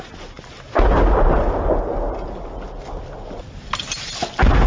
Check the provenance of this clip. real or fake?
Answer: real